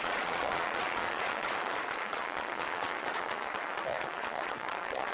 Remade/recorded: remade